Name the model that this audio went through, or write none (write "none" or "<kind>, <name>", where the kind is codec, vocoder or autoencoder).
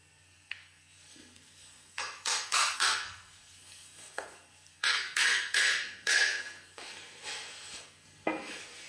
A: codec, SNAC